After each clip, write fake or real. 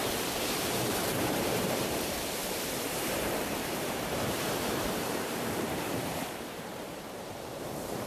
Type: fake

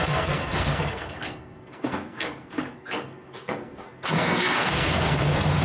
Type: fake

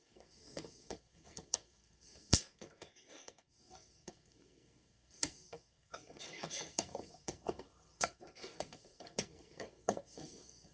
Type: fake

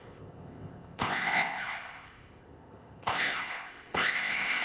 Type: fake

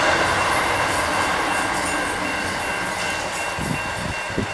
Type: real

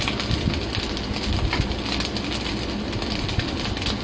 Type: real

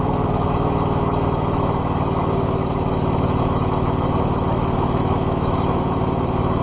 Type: fake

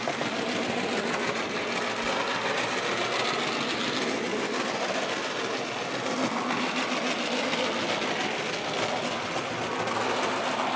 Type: real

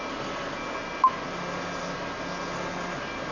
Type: real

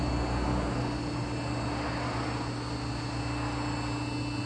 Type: real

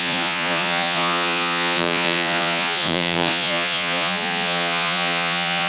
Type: fake